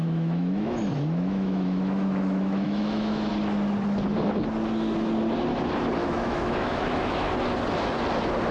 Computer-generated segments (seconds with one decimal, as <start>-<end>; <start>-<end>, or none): 0.0-3.3; 6.0-7.3